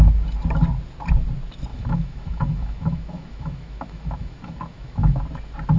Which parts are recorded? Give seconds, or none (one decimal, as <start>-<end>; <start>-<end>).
0.0-1.7; 5.2-5.8